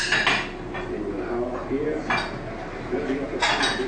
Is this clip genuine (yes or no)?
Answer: yes